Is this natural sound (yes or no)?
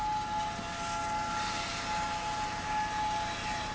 yes